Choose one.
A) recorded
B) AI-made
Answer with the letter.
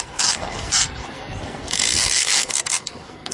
B